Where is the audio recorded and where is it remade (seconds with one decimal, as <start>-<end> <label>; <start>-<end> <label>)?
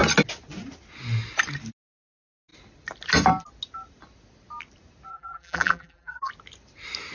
0.0-5.1 recorded; 5.1-6.3 remade; 6.3-7.1 recorded